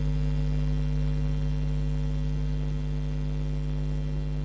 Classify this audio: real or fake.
real